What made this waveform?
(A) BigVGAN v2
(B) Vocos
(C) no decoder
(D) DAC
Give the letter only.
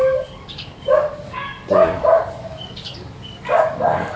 D